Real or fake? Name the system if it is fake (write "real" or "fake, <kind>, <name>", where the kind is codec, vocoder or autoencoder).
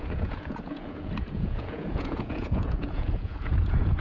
fake, vocoder, Vocos